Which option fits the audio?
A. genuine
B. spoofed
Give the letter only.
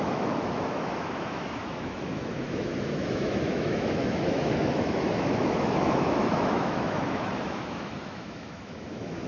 B